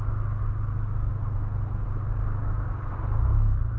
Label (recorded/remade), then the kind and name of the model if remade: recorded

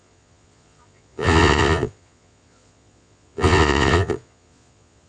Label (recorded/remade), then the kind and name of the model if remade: remade, vocoder, Vocos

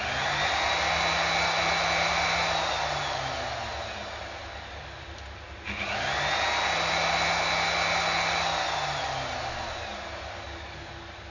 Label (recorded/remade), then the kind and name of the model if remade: recorded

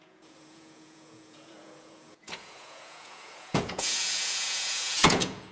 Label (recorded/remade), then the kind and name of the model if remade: remade, vocoder, Vocos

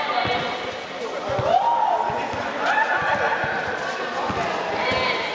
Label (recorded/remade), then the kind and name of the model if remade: recorded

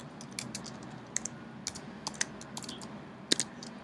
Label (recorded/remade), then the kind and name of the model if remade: recorded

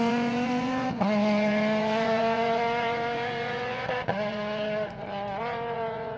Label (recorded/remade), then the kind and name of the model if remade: remade, vocoder, Vocos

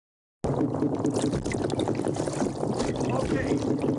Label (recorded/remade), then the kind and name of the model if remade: recorded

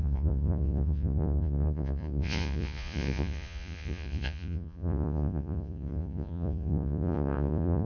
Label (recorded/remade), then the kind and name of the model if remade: remade, vocoder, Vocos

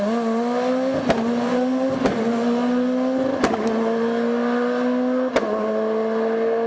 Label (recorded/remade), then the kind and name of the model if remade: recorded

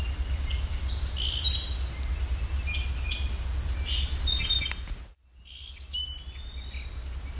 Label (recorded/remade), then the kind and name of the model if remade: recorded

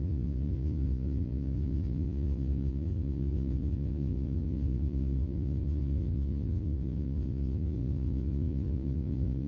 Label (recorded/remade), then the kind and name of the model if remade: remade, vocoder, Vocos